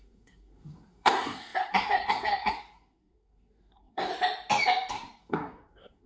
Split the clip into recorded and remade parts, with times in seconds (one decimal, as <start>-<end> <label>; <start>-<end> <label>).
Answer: 0.0-4.1 remade; 4.1-4.9 recorded; 4.9-6.1 remade